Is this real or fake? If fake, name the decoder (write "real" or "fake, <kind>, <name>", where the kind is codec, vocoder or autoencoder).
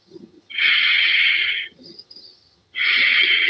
fake, vocoder, HiFi-GAN